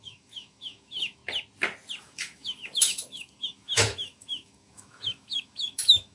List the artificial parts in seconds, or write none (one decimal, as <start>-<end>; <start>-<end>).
0.0-1.2; 2.0-6.1